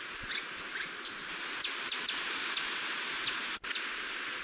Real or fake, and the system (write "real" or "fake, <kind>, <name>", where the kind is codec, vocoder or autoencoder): real